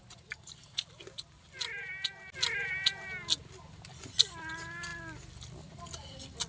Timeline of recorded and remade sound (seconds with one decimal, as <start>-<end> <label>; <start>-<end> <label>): 0.0-6.5 recorded